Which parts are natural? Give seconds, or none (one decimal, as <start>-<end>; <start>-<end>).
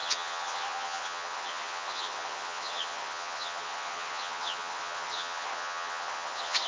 none